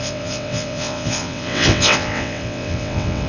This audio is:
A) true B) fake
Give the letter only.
B